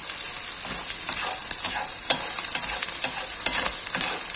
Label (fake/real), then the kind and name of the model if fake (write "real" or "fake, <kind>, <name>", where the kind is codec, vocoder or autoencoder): real